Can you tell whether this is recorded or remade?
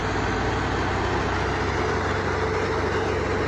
recorded